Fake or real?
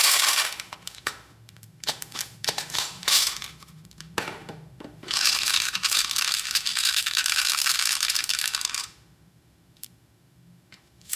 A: fake